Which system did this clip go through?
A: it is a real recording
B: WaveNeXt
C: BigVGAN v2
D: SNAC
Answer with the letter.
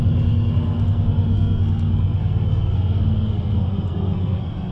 D